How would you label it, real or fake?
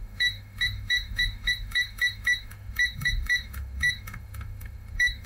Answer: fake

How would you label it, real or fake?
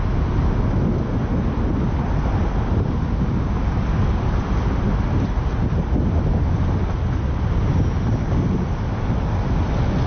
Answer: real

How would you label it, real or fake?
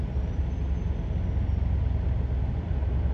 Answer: real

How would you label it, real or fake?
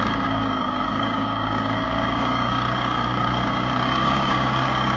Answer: fake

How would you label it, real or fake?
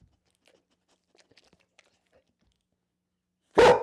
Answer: real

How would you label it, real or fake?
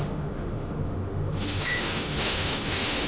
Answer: fake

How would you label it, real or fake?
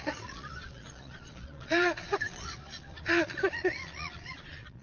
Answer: fake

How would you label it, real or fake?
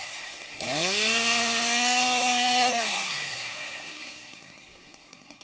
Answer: fake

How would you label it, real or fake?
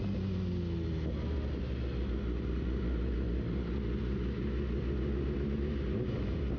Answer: real